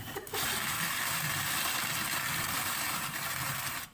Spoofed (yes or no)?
no